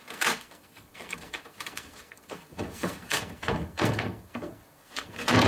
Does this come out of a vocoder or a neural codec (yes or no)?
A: yes